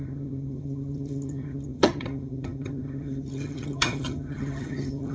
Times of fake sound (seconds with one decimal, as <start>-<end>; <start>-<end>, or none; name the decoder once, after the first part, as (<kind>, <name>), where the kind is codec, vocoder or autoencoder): 0.0-5.1 (vocoder, HiFi-GAN)